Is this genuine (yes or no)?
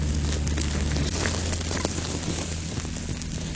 yes